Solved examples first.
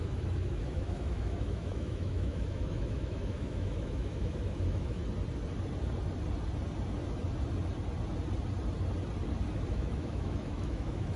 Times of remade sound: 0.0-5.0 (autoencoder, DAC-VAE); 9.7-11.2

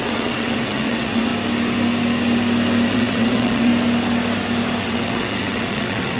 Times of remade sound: 0.0-1.3 (vocoder, WaveNeXt); 2.9-3.7; 4.8-6.2

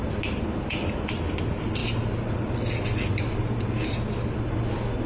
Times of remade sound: none

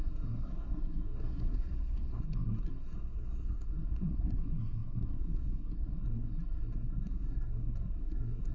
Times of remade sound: 0.0-8.5 (codec, SNAC)

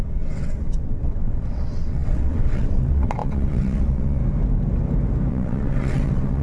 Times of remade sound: 0.0-4.2 (vocoder, WaveNeXt); 5.3-6.4

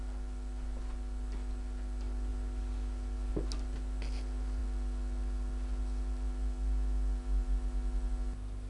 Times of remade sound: none

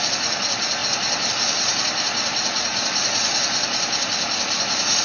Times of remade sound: none